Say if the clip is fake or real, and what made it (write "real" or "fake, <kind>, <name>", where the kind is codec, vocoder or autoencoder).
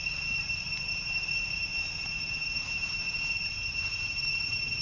fake, vocoder, BigVGAN v2